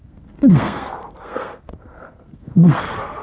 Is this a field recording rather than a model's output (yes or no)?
no